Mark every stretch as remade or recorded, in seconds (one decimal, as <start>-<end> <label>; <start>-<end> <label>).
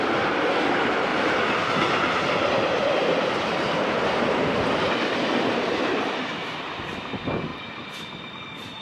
0.0-3.0 recorded; 3.0-7.0 remade; 7.0-8.8 recorded